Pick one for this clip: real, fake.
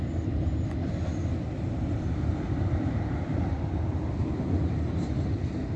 real